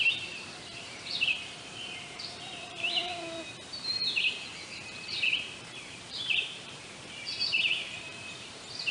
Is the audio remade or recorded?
remade